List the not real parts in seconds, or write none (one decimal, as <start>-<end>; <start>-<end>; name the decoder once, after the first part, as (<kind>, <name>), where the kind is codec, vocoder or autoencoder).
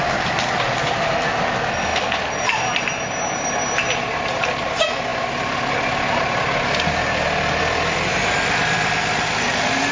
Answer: none